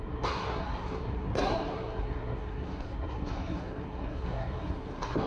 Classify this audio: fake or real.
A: fake